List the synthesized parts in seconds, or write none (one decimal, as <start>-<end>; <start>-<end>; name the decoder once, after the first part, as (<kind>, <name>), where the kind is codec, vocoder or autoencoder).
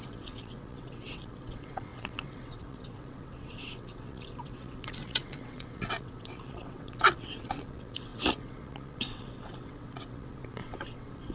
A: 0.0-11.3 (vocoder, WaveNeXt)